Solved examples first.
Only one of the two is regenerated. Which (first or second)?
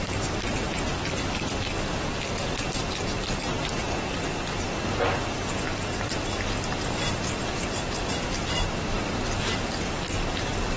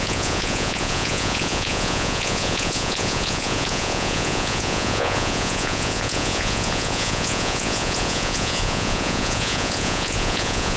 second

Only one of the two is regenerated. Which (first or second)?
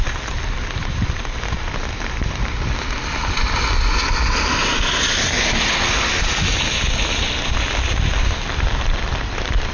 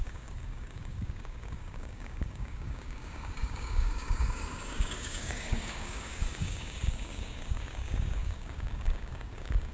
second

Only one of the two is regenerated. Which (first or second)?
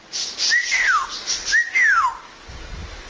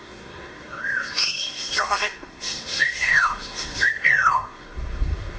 second